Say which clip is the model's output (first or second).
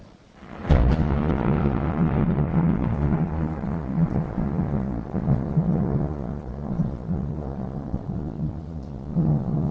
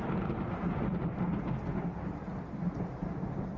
first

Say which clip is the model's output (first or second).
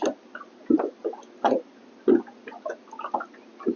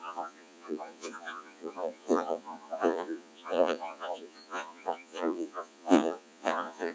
second